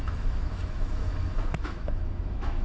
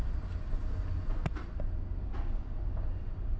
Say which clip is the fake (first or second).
first